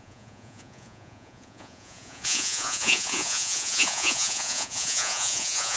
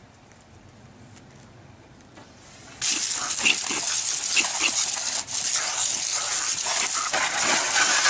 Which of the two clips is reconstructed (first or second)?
first